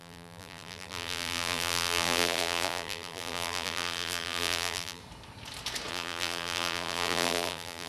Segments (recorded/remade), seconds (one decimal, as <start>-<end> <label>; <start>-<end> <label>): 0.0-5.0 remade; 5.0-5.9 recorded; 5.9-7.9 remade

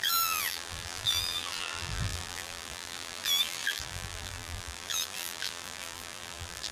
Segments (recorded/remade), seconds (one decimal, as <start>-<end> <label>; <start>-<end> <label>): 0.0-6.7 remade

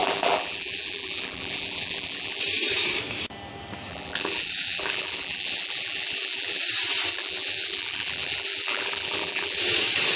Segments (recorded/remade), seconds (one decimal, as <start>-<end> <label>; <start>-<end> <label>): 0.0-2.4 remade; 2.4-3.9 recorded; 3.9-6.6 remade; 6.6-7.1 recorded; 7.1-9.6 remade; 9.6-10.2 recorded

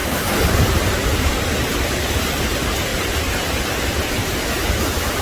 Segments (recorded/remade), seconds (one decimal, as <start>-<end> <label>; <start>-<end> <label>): 0.0-2.1 remade; 2.1-5.2 recorded

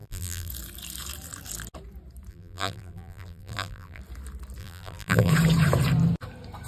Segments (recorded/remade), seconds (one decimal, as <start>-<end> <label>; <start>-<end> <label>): 0.0-0.5 remade; 0.5-2.3 recorded; 2.3-4.0 remade; 4.0-4.6 recorded; 4.6-5.3 remade; 5.3-6.7 recorded